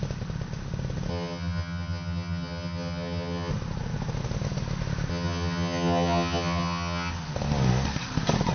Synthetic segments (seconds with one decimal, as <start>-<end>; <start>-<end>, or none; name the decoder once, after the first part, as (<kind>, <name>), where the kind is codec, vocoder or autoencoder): 1.1-3.5 (vocoder, HiFi-GAN); 5.1-7.1